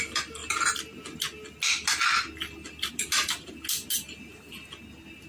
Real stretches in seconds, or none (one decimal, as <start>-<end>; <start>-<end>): 0.0-5.3